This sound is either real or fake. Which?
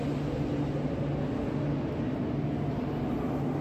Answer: real